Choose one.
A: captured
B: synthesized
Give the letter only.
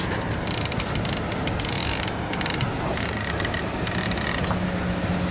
A